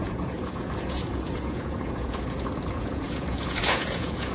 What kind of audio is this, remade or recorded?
remade